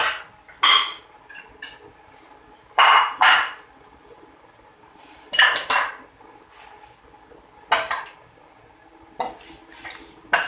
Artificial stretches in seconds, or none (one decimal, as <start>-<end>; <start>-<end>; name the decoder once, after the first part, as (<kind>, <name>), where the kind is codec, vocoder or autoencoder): 1.9-5.7 (vocoder, BigVGAN v2)

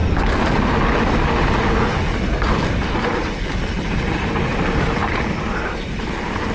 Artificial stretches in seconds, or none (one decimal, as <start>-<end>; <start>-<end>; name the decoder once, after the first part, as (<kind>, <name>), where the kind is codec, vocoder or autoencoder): 3.9-6.5 (vocoder, BigVGAN v2)

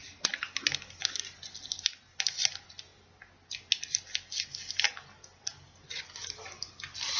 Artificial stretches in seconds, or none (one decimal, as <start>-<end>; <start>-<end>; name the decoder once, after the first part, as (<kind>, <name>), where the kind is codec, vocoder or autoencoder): none

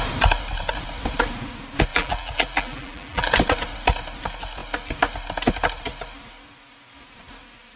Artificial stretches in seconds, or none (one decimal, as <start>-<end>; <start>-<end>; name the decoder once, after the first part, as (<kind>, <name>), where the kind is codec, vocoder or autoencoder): 1.9-3.3 (vocoder, BigVGAN v2)

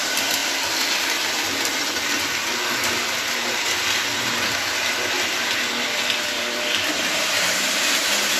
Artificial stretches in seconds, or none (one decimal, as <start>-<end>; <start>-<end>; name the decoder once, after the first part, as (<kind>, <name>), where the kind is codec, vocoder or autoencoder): 0.4-0.9 (vocoder, BigVGAN v2)